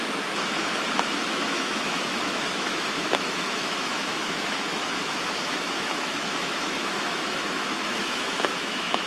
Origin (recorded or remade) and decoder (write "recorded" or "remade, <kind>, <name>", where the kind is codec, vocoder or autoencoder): remade, autoencoder, DAC-VAE